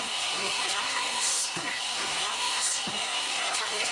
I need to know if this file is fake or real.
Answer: fake